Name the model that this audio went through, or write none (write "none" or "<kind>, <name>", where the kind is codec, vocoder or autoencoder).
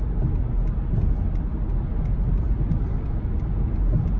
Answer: none